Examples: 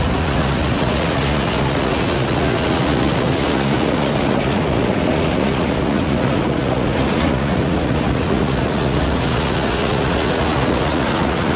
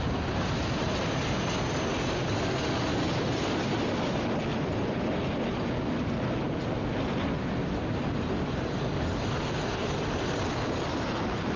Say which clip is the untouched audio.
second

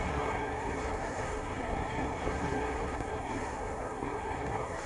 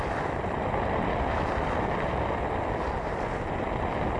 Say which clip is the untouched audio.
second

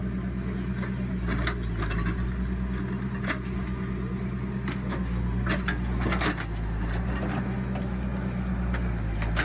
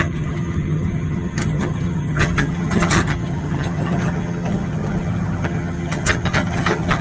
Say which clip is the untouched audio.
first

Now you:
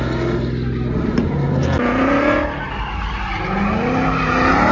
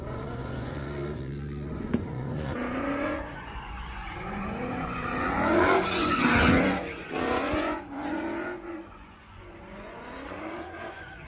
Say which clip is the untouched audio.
first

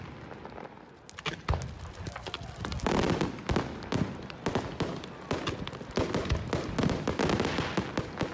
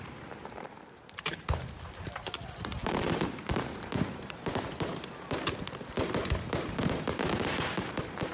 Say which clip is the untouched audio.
first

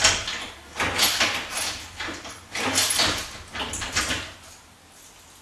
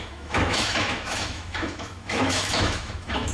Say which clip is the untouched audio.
first